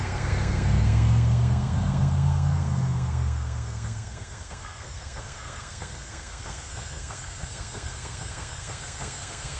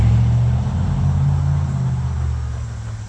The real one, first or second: second